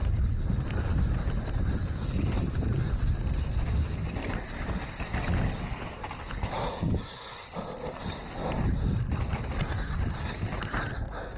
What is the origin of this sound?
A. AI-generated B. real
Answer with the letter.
B